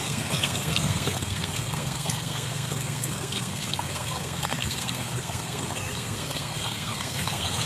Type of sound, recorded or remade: remade